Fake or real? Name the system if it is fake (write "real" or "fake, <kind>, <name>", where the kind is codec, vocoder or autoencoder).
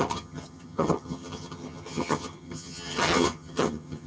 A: fake, vocoder, HiFi-GAN